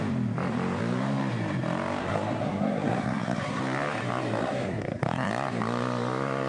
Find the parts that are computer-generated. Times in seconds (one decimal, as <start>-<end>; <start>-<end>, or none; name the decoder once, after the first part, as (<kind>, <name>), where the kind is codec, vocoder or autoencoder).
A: 2.0-3.6 (codec, SNAC); 4.4-5.3